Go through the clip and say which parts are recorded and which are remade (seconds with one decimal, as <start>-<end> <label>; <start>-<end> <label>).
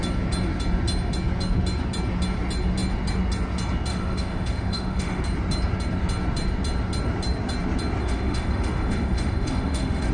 0.0-3.9 recorded; 3.9-5.2 remade; 5.2-8.0 recorded; 8.0-10.1 remade